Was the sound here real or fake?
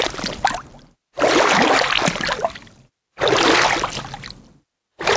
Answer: real